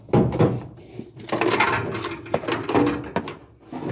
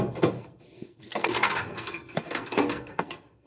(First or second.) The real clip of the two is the first